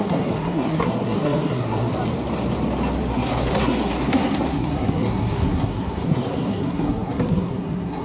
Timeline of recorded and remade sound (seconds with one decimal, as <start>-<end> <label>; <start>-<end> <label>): 0.0-1.9 remade; 1.9-3.0 recorded; 3.0-8.0 remade